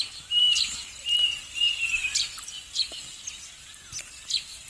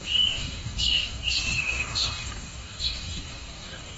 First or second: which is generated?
second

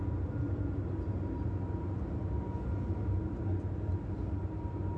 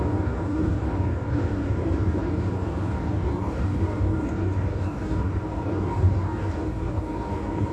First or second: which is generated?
second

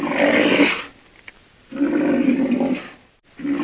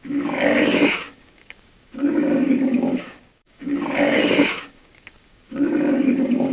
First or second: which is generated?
second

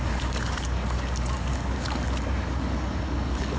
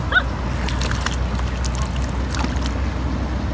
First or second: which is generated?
first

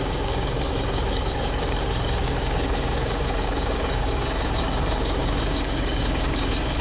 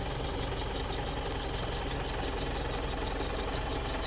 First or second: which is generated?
first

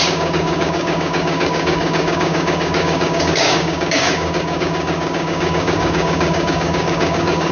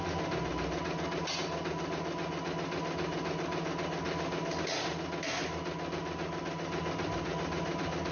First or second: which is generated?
first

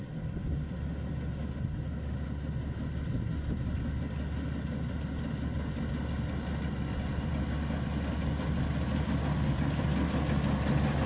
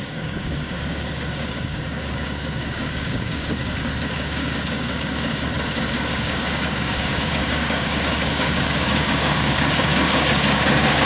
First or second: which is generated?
second